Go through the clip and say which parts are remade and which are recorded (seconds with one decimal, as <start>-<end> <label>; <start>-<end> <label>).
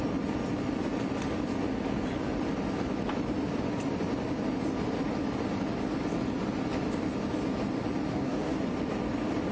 0.0-8.1 recorded; 8.1-8.6 remade; 8.6-9.5 recorded